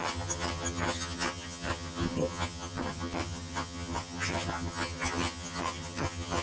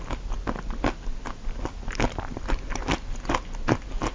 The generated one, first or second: first